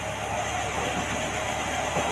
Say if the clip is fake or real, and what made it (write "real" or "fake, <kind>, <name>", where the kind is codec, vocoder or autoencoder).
real